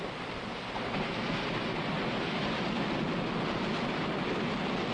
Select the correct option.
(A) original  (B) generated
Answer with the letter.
A